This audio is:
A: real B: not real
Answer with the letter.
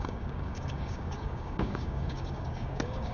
B